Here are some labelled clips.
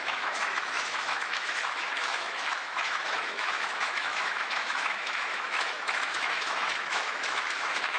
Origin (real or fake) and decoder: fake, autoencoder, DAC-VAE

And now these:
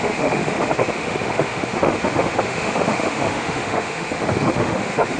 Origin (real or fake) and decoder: fake, autoencoder, DAC-VAE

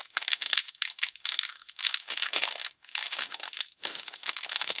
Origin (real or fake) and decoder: fake, autoencoder, DAC-VAE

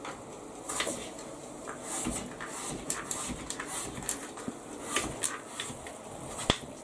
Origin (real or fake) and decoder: real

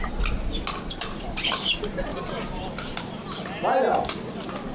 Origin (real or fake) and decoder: real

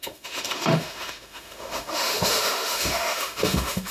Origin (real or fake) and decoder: fake, autoencoder, DAC-VAE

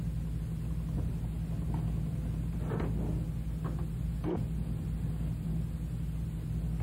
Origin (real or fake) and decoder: real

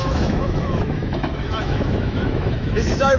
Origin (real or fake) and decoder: fake, autoencoder, DAC-VAE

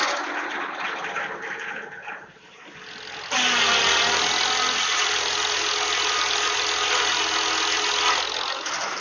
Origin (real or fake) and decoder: real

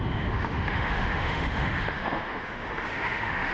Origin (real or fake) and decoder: fake, autoencoder, DAC-VAE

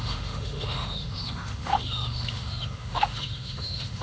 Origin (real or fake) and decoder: fake, autoencoder, DAC-VAE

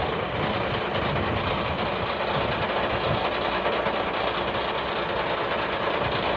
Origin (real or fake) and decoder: real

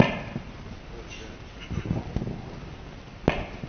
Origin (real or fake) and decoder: real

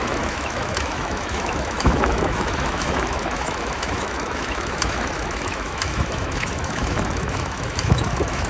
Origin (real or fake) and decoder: fake, autoencoder, DAC-VAE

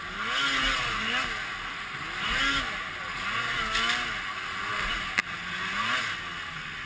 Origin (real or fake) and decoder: real